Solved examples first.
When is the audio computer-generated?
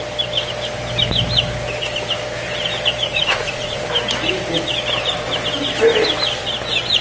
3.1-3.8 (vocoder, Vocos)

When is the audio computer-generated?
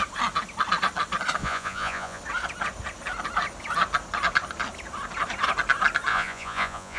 1.4-2.2 (vocoder, Vocos); 6.1-7.0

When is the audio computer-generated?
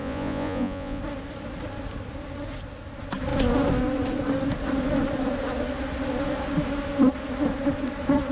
0.0-1.0 (vocoder, Vocos)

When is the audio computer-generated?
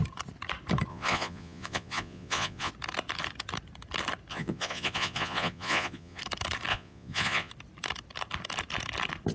0.9-2.7 (vocoder, Vocos); 4.3-6.2; 6.7-7.5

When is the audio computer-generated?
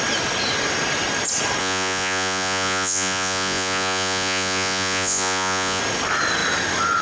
1.6-5.8 (vocoder, Vocos)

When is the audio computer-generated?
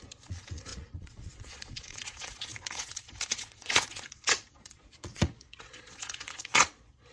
0.0-7.1 (vocoder, Vocos)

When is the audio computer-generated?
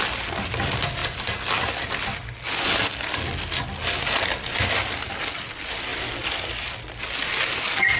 none